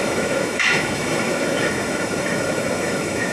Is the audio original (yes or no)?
no